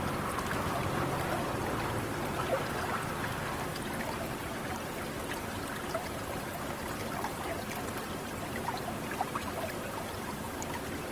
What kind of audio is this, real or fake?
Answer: real